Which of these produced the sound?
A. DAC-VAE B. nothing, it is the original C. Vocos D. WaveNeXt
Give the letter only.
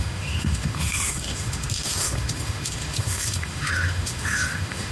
A